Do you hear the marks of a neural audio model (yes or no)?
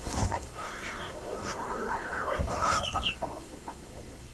yes